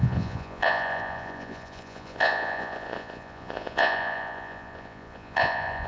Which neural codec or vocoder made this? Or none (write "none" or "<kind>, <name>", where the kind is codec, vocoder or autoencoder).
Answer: vocoder, Vocos